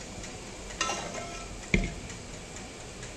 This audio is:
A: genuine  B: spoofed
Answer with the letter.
A